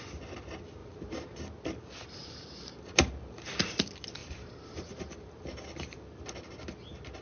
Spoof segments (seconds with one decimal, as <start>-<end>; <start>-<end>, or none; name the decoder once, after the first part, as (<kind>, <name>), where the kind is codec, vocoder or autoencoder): 0.8-1.4 (vocoder, BigVGAN v2); 2.2-3.4; 4.2-6.2